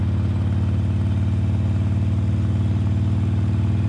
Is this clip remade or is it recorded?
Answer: recorded